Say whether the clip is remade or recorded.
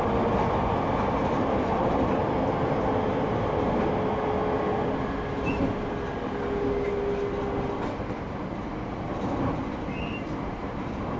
recorded